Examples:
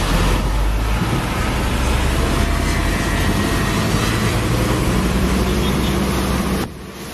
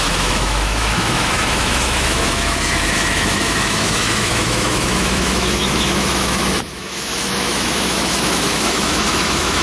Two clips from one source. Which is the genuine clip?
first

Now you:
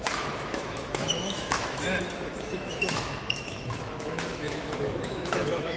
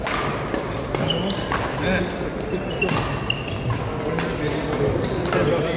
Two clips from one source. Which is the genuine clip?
second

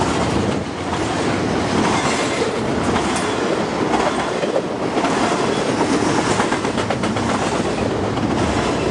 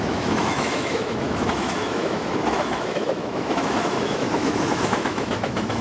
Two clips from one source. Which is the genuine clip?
first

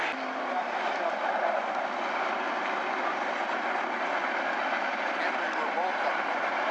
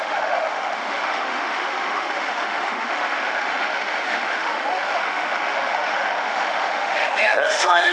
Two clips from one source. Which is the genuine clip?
first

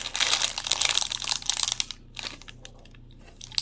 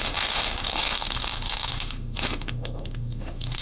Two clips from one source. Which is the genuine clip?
first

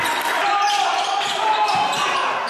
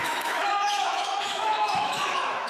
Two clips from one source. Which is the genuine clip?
first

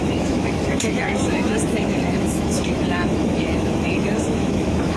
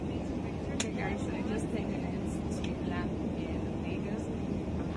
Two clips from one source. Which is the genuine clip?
second